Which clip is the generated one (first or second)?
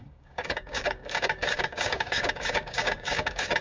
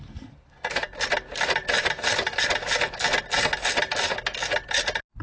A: first